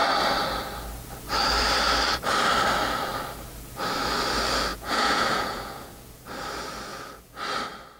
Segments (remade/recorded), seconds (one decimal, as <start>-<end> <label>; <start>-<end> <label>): 0.0-4.7 recorded; 4.7-6.2 remade; 6.2-6.9 recorded; 6.9-7.4 remade; 7.4-8.0 recorded